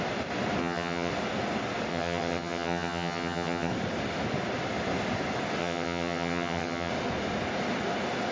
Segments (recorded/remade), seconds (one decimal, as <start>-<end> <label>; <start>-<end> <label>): 0.0-0.6 recorded; 0.6-1.1 remade; 1.1-1.9 recorded; 1.9-3.7 remade; 3.7-5.6 recorded; 5.6-6.9 remade; 6.9-8.3 recorded